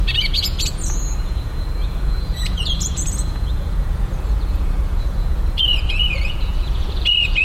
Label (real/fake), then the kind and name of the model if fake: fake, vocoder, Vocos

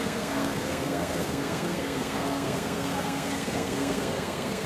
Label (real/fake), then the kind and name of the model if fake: fake, codec, SNAC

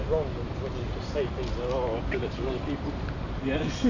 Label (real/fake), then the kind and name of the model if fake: real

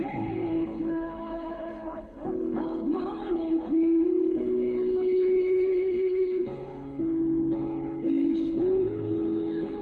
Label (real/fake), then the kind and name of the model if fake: fake, codec, HILCodec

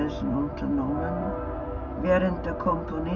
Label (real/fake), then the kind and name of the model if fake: real